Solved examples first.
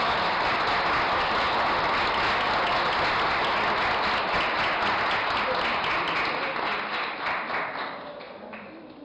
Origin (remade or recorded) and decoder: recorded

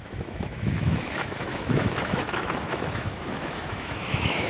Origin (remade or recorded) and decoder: remade, autoencoder, DAC-VAE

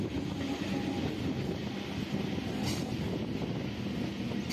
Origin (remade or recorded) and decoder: recorded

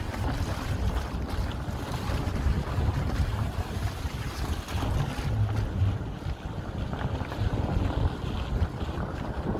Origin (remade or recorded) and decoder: recorded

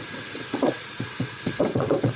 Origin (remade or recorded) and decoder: remade, vocoder, WaveNeXt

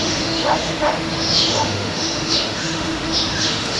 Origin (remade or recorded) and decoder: remade, autoencoder, DAC-VAE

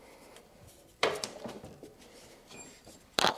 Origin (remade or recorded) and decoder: remade, vocoder, BigVGAN v2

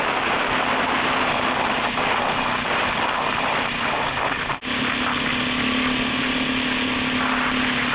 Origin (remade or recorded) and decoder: recorded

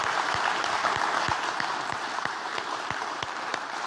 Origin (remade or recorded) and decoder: remade, vocoder, BigVGAN v2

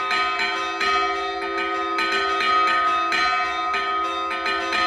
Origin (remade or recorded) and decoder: recorded